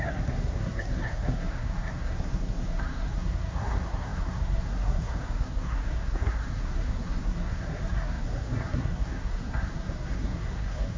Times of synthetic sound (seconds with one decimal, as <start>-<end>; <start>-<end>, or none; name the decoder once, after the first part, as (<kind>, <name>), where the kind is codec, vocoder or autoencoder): 0.0-11.0 (codec, SNAC)